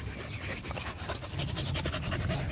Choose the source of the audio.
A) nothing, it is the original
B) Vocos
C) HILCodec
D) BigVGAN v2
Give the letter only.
D